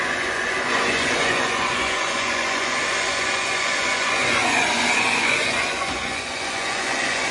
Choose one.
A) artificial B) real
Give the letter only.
A